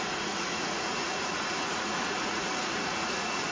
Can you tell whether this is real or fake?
fake